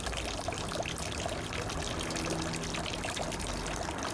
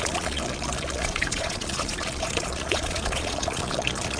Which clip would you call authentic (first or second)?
first